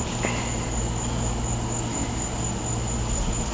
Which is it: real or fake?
real